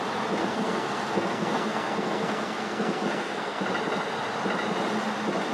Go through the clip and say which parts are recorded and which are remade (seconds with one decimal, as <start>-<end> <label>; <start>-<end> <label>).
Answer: 0.0-0.4 recorded; 0.4-3.6 remade; 3.6-5.5 recorded